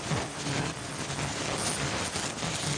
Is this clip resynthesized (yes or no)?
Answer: no